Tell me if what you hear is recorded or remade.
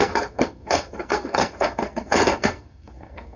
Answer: remade